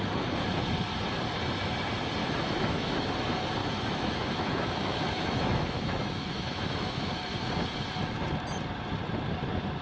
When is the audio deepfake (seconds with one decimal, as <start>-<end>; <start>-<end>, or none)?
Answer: 2.2-3.1; 3.6-7.1